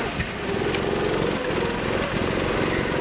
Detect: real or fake real